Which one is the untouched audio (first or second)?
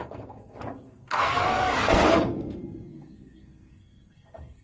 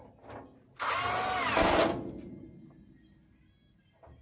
second